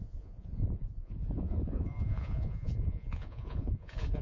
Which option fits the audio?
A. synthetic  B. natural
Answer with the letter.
A